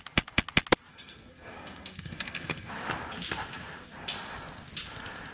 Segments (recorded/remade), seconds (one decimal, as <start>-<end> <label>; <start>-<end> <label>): 0.0-0.9 recorded; 0.9-2.7 remade; 2.7-5.3 recorded